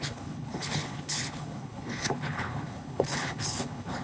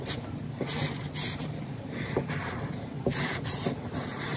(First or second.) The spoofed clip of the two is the first